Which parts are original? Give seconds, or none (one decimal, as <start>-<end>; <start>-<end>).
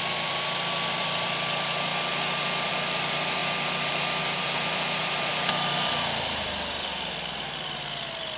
1.9-2.7; 3.4-4.2